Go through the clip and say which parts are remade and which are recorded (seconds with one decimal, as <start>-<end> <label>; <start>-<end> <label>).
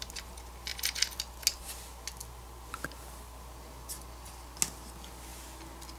0.0-6.0 recorded